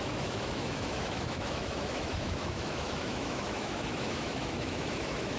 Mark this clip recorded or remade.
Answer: remade